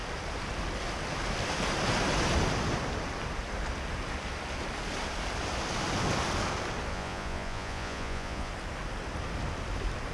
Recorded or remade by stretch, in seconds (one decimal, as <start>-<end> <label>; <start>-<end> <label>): 0.0-6.9 recorded; 6.9-8.5 remade; 8.5-10.1 recorded